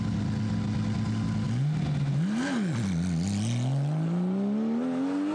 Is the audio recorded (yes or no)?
yes